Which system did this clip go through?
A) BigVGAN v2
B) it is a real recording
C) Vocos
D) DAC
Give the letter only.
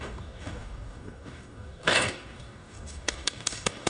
D